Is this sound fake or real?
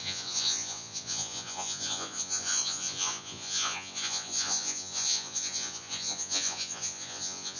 fake